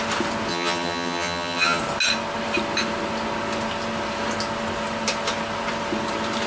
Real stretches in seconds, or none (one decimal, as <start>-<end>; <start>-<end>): 0.0-0.5; 1.8-6.5